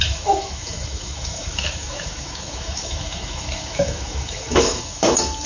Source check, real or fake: fake